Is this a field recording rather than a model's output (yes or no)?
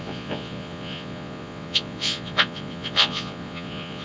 no